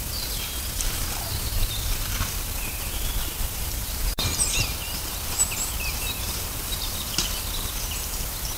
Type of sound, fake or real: fake